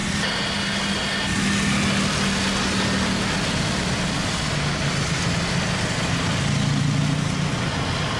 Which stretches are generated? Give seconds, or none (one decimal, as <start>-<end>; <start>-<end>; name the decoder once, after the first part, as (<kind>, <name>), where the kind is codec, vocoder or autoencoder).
none